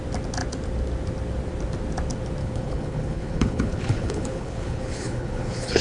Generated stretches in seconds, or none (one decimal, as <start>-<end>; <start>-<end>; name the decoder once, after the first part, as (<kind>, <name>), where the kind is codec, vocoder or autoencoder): 2.4-5.8 (codec, HILCodec)